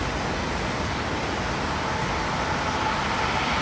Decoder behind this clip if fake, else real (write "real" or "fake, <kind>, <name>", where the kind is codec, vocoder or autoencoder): real